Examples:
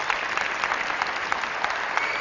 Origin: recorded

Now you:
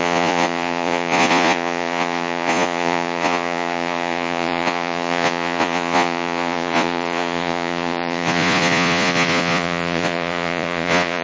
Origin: remade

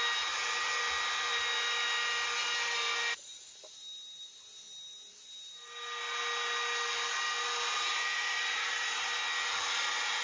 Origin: recorded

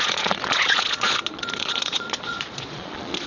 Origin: remade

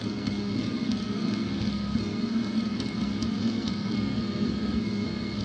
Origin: remade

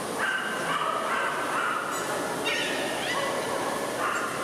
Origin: recorded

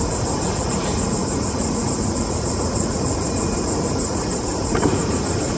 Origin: remade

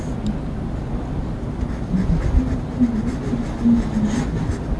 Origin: recorded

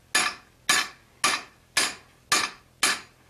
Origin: recorded